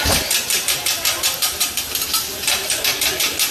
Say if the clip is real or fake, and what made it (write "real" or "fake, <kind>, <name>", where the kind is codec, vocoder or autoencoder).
fake, vocoder, BigVGAN v2